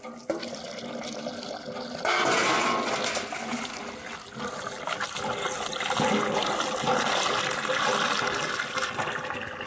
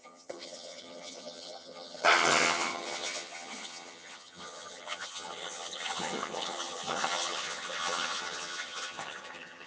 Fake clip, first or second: second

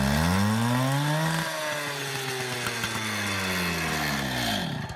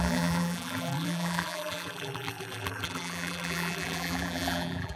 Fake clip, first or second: second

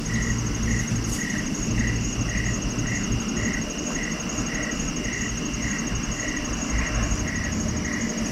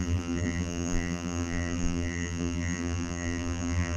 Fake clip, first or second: second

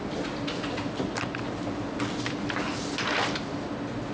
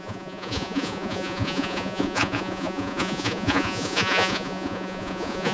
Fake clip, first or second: second